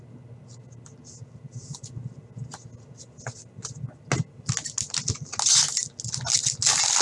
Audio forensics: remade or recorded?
recorded